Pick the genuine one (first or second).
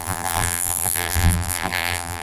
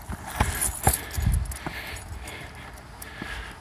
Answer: second